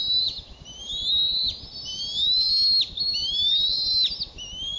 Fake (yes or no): no